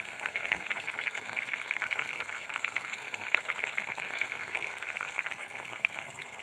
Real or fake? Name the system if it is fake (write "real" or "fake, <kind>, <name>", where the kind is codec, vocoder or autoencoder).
fake, codec, SNAC